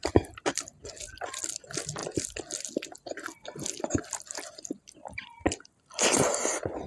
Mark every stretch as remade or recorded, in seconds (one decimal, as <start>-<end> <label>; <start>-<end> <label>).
0.0-6.9 recorded